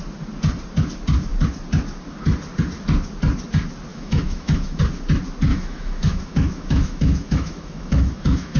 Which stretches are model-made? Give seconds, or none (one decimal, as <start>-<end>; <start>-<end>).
3.9-4.8; 5.5-8.6